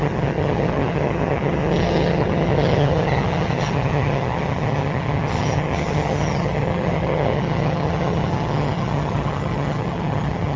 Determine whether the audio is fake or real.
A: fake